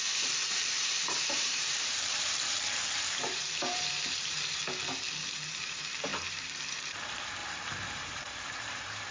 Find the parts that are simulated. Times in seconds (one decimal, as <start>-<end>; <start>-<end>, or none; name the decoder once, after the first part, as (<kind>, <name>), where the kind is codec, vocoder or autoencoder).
0.0-4.6 (vocoder, BigVGAN v2); 5.5-9.1

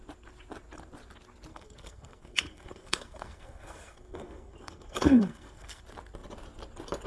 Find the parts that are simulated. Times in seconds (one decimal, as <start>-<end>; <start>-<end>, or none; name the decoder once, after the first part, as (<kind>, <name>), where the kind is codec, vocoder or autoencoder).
1.5-5.8 (codec, SNAC)

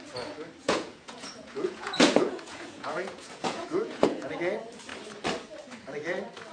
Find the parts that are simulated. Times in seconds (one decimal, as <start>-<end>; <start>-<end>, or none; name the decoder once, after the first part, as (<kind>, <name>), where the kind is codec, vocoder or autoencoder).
0.6-4.4 (vocoder, Vocos)